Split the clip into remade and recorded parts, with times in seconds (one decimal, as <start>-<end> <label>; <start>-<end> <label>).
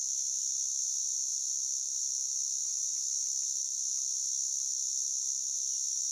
0.0-2.6 recorded; 2.6-3.2 remade; 3.2-6.1 recorded